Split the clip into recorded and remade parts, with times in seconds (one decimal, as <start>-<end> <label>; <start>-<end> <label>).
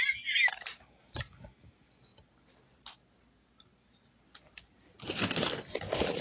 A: 0.0-0.7 recorded; 0.7-1.3 remade; 1.3-6.2 recorded